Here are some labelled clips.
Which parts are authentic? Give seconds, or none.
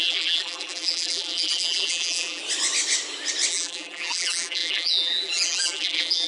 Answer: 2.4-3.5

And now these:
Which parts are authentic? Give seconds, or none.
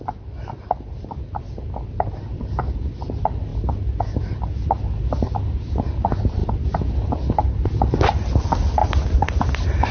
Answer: 0.0-9.9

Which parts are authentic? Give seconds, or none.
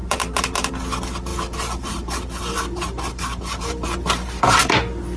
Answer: 0.7-1.3; 4.4-5.2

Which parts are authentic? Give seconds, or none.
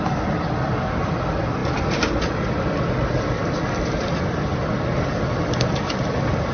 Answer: none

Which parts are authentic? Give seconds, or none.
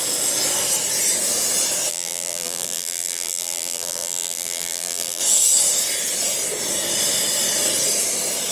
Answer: 0.0-1.9; 5.2-8.5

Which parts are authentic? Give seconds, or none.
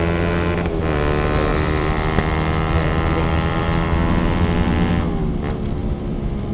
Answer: 0.0-1.5; 4.9-5.8